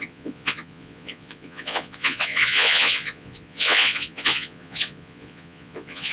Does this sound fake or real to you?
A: fake